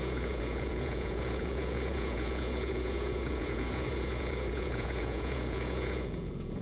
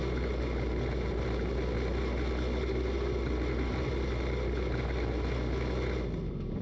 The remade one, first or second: first